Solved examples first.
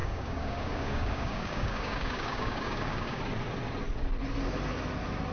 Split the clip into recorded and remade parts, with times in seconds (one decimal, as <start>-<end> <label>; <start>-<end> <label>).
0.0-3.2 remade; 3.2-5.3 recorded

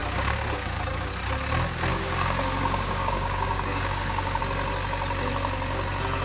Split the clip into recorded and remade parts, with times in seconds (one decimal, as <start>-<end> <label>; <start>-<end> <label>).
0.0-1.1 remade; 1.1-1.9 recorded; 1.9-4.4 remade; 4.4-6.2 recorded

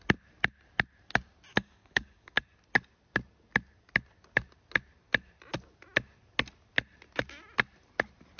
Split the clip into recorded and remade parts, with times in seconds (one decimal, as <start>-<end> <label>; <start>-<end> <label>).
0.0-1.5 recorded; 1.5-2.4 remade; 2.4-8.4 recorded

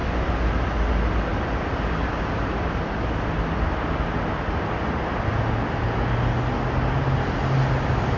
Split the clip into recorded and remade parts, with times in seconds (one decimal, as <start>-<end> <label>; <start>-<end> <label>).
0.0-8.2 recorded